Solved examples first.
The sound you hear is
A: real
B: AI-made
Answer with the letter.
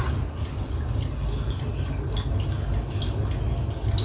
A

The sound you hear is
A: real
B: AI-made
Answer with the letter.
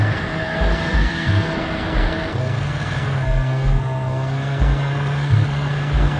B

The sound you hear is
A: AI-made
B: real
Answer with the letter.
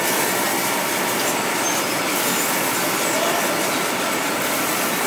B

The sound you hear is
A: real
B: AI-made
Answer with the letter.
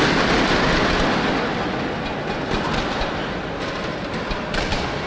A